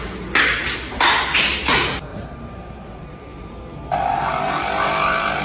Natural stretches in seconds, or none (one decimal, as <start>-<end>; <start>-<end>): 0.0-2.1